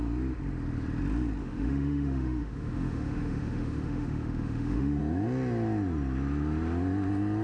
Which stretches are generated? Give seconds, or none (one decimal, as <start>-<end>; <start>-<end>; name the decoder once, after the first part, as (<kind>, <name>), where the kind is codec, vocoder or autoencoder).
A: 1.4-5.0 (autoencoder, DAC-VAE)